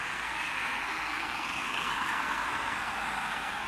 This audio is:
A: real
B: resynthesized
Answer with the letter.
B